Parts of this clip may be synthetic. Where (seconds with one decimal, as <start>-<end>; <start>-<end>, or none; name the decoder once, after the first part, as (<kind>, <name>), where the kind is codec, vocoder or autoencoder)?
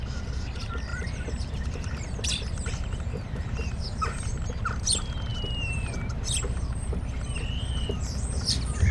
0.9-4.5 (vocoder, BigVGAN v2)